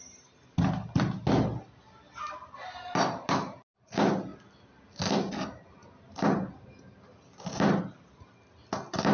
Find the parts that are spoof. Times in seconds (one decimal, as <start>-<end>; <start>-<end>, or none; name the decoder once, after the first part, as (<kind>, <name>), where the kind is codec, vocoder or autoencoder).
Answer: none